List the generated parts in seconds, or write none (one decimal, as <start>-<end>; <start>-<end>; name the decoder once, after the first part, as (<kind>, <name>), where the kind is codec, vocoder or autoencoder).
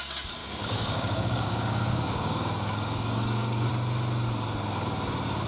0.4-3.7 (codec, DAC)